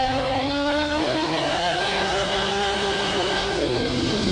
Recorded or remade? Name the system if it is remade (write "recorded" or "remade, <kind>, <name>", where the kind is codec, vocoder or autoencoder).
remade, codec, SNAC